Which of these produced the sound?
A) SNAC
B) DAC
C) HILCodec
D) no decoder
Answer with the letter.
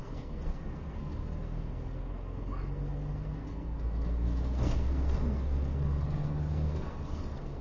A